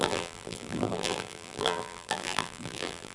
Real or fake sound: fake